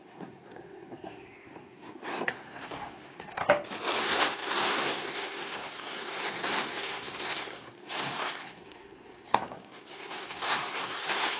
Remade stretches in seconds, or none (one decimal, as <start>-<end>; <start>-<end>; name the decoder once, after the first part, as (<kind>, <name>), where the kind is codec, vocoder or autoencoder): 0.0-3.4 (codec, SNAC); 4.0-11.4